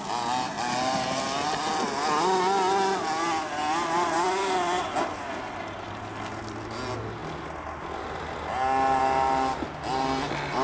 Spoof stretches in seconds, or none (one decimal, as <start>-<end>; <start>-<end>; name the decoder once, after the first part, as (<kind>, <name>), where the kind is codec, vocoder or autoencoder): none